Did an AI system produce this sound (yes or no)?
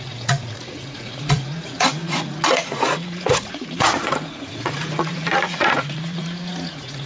yes